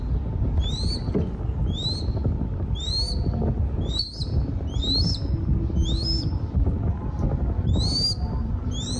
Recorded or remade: recorded